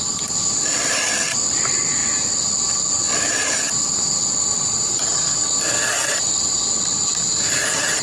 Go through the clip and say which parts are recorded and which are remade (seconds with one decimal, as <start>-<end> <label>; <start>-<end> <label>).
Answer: 0.0-8.0 recorded